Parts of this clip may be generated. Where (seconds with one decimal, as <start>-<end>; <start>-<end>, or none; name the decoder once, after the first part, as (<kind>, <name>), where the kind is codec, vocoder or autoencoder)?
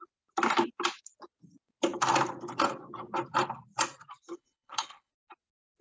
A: 4.3-5.1 (codec, HILCodec)